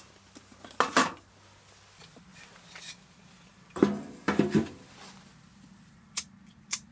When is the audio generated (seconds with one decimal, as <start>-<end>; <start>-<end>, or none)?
none